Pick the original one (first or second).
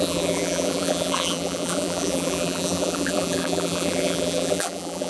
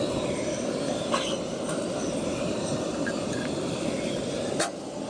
second